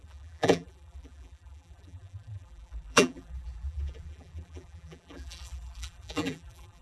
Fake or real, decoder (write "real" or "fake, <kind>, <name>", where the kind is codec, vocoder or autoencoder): fake, vocoder, BigVGAN v2